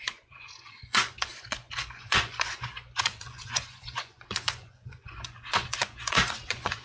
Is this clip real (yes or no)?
no